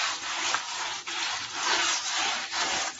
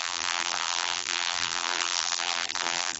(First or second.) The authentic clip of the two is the first